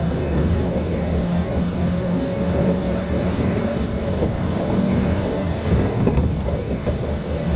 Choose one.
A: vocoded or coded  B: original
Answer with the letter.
A